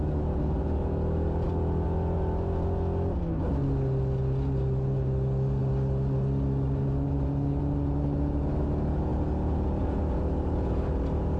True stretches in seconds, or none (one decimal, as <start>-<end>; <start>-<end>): 0.0-11.4